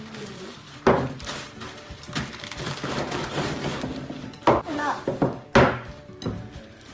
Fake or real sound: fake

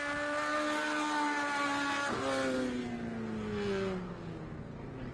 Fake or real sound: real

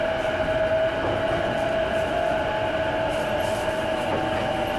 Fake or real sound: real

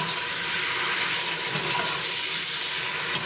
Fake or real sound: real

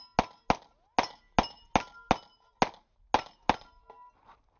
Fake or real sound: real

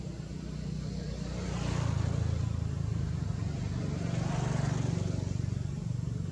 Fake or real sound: real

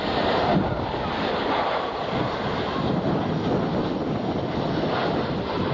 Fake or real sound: real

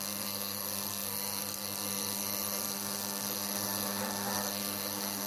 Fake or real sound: fake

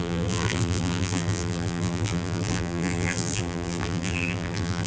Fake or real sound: fake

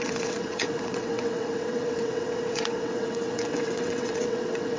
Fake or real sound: fake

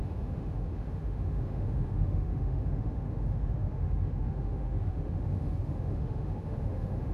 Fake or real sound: fake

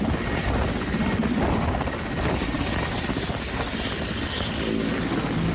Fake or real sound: real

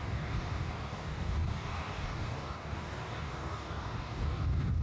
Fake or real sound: fake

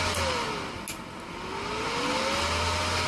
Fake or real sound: real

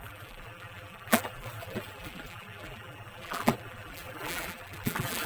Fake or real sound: fake